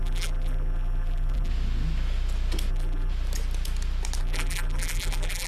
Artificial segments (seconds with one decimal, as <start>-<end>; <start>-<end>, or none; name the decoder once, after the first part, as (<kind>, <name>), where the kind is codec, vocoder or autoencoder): 0.0-1.5 (vocoder, BigVGAN v2); 2.7-3.1; 4.2-5.5

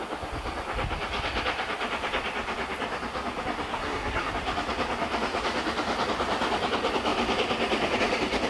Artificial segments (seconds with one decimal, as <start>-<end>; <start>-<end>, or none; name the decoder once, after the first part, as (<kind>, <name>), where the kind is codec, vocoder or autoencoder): 3.7-4.3 (codec, SNAC)

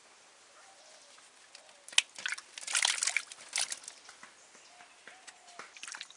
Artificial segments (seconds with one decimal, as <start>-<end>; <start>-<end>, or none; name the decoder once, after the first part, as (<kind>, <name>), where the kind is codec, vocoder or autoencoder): none

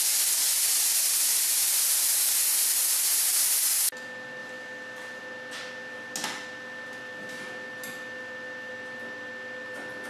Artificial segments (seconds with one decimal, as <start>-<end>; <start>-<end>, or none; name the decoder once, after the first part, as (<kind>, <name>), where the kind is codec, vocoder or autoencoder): 4.4-5.2 (vocoder, BigVGAN v2)

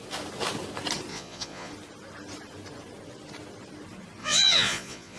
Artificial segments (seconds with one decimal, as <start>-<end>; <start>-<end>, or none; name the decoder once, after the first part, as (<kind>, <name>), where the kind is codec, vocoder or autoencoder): 1.1-1.7 (vocoder, Vocos); 4.2-5.2